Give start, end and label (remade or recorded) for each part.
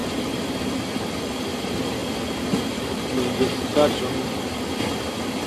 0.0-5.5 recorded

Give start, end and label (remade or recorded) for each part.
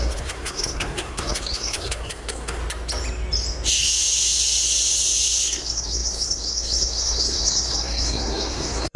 0.0-2.6 remade; 2.6-5.4 recorded; 5.4-9.0 remade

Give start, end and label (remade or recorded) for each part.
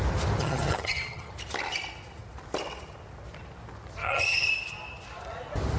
0.0-0.4 recorded; 0.4-1.3 remade; 1.3-4.0 recorded; 4.0-4.5 remade; 4.5-5.8 recorded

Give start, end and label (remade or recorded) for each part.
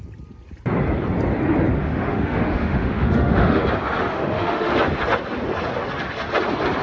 0.0-1.8 recorded; 1.8-3.6 remade; 3.6-4.1 recorded; 4.1-4.7 remade; 4.7-6.8 recorded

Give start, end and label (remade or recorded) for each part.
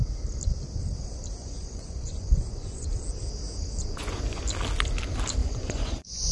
0.0-1.4 recorded; 1.4-2.9 remade; 2.9-3.8 recorded; 3.8-4.4 remade; 4.4-5.4 recorded; 5.4-6.3 remade